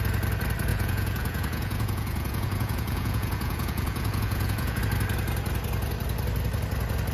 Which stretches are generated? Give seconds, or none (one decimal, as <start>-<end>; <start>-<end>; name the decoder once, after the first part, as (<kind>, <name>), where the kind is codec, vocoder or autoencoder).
0.7-4.8 (vocoder, Vocos)